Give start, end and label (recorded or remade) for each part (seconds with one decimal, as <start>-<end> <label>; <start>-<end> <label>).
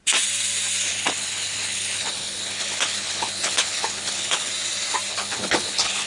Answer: 0.0-0.9 recorded; 0.9-4.5 remade; 4.5-5.1 recorded; 5.1-6.1 remade